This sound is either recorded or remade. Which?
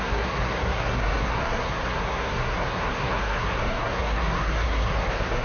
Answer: remade